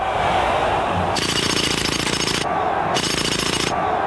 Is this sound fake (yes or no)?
no